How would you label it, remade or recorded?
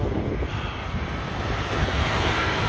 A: remade